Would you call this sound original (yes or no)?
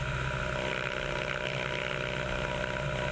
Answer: yes